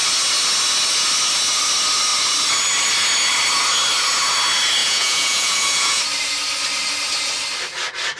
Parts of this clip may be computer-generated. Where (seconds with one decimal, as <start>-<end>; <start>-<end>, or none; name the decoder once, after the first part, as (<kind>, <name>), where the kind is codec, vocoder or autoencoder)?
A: 4.8-6.0 (vocoder, Vocos)